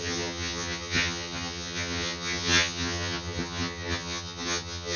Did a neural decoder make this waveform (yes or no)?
yes